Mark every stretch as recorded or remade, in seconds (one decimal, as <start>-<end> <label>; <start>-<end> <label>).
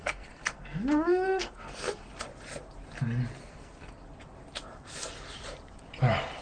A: 0.0-2.1 remade; 2.1-3.4 recorded; 3.4-3.9 remade; 3.9-6.4 recorded